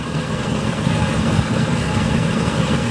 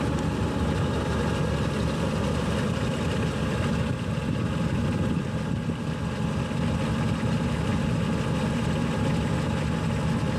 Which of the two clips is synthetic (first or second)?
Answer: first